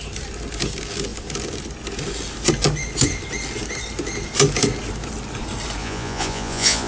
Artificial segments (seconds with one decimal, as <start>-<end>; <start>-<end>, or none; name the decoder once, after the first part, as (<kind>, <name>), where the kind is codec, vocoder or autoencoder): 5.8-6.9 (vocoder, Vocos)